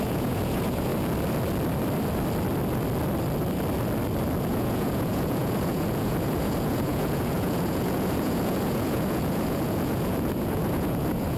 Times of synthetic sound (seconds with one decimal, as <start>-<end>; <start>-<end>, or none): 0.0-0.9; 4.4-11.4